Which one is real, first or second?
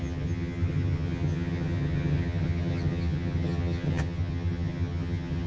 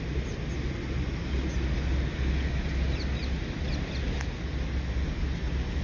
second